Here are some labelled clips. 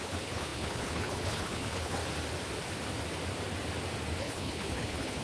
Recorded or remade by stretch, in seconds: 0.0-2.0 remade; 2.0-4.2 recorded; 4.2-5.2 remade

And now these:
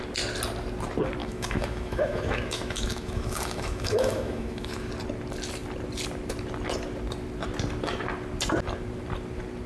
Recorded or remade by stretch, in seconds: 0.0-1.2 recorded; 1.2-4.9 remade; 4.9-9.7 recorded

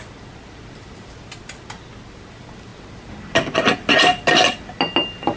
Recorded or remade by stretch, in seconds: 0.0-5.4 recorded

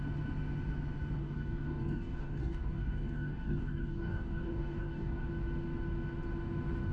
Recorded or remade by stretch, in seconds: 0.0-1.2 recorded; 1.2-5.3 remade; 5.3-6.9 recorded

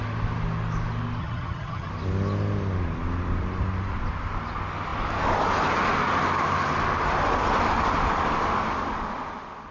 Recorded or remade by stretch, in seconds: 0.0-1.2 recorded; 1.2-1.9 remade; 1.9-9.7 recorded

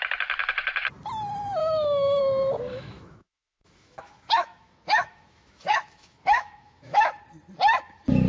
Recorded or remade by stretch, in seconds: 0.0-1.6 recorded; 1.6-2.2 remade; 2.2-2.7 recorded; 2.7-7.2 remade; 7.2-8.3 recorded

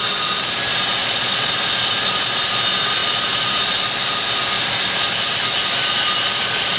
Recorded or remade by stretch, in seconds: 0.0-1.0 recorded; 1.0-1.5 remade; 1.5-6.8 recorded

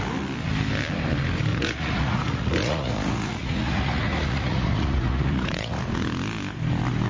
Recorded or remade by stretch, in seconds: 0.0-1.5 recorded; 1.5-5.8 remade; 5.8-7.1 recorded